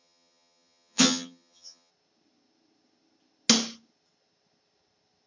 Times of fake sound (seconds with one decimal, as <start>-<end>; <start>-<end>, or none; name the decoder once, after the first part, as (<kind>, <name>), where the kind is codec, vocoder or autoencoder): 0.0-1.9 (vocoder, HiFi-GAN)